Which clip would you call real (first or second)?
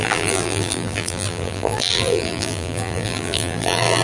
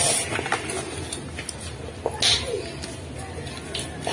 second